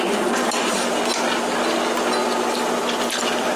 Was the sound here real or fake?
real